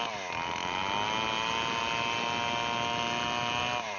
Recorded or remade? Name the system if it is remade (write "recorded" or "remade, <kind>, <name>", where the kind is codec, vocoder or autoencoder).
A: recorded